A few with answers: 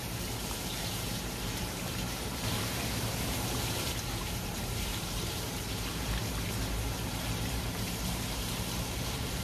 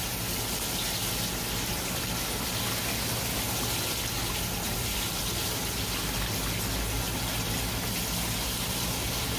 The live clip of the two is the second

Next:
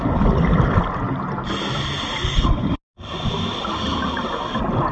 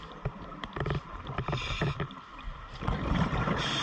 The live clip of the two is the first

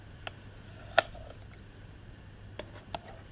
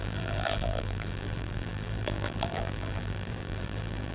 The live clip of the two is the first